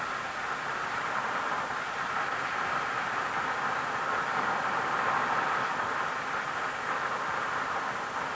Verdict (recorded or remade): recorded